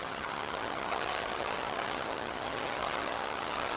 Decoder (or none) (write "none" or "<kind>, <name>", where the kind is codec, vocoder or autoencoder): vocoder, HiFi-GAN